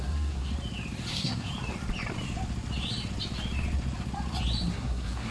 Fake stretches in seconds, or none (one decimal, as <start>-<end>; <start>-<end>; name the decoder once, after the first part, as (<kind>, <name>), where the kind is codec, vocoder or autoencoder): 0.0-0.5 (codec, SNAC); 1.1-1.5; 4.7-5.3